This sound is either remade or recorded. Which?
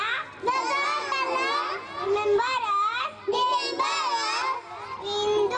recorded